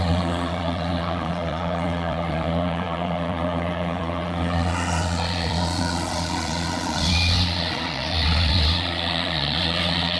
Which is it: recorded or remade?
remade